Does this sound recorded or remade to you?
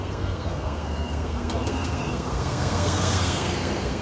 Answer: remade